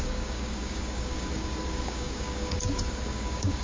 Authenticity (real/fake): fake